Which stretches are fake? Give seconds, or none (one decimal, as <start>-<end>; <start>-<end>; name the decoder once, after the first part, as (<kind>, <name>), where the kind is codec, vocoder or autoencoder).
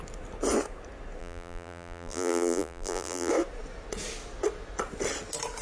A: 1.2-3.3 (vocoder, BigVGAN v2)